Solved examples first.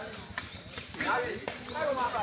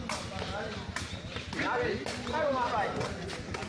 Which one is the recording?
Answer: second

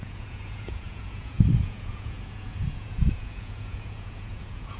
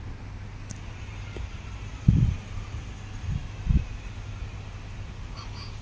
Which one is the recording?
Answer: second